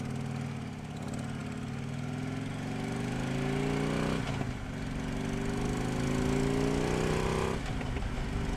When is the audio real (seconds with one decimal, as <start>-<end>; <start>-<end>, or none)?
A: 0.0-8.6